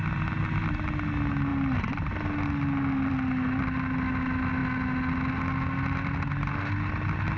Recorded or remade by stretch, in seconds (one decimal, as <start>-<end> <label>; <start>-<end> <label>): 0.0-7.4 recorded